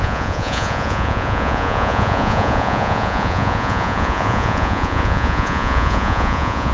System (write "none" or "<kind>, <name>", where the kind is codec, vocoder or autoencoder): vocoder, Vocos